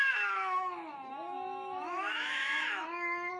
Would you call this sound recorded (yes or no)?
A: no